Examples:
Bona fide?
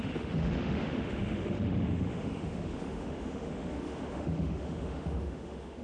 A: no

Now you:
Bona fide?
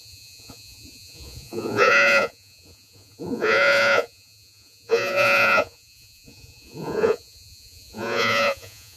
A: no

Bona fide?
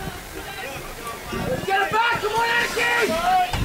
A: yes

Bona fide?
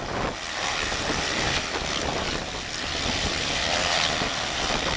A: yes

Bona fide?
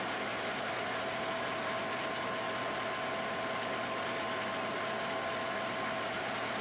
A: yes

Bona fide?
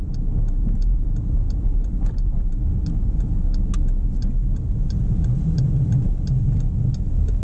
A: yes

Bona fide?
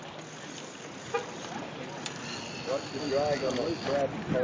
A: yes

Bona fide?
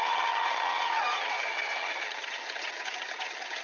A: no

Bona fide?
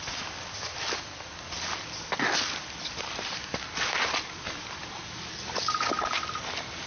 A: yes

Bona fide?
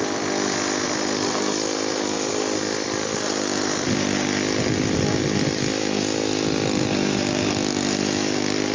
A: yes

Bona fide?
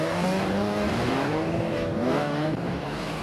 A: no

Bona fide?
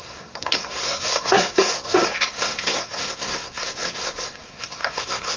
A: no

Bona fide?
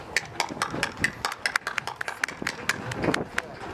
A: yes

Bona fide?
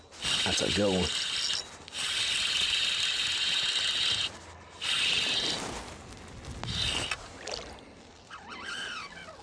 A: yes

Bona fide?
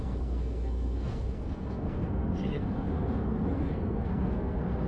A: no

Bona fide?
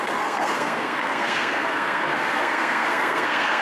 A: no